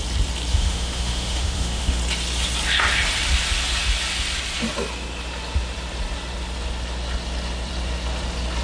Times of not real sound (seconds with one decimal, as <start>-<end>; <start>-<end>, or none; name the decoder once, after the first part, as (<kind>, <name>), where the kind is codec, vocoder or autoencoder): 0.5-2.0 (autoencoder, DAC-VAE)